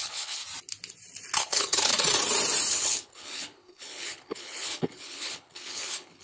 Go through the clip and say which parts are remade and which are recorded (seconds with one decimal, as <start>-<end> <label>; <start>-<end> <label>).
0.0-0.4 remade; 0.4-1.4 recorded; 1.4-1.9 remade; 1.9-2.7 recorded; 2.7-6.2 remade